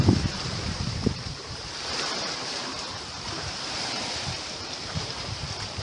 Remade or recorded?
remade